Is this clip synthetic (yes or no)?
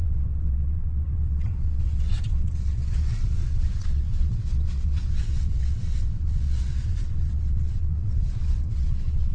yes